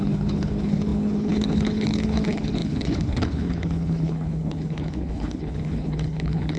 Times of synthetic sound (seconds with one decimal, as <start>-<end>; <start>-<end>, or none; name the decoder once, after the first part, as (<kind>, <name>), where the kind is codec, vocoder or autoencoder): 0.0-6.6 (codec, HILCodec)